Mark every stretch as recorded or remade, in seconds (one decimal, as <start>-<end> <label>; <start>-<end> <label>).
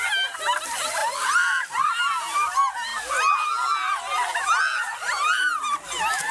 0.0-6.3 recorded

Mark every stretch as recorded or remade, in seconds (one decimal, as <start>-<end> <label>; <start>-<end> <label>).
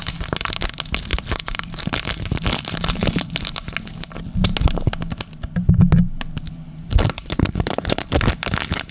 0.0-1.1 recorded; 1.1-2.6 remade; 2.6-6.9 recorded; 6.9-8.2 remade; 8.2-8.9 recorded